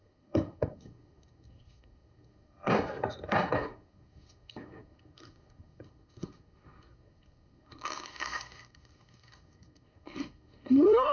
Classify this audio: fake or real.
fake